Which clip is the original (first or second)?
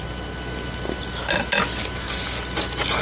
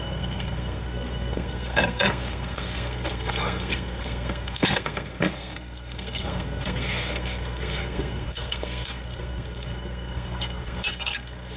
first